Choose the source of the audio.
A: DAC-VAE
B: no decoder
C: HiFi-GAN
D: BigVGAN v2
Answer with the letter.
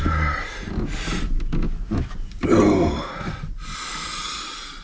B